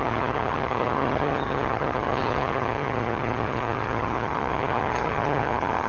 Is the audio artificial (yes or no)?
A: yes